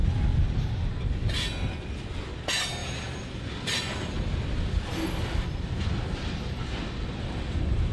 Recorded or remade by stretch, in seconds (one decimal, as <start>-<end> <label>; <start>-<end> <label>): 0.0-7.9 recorded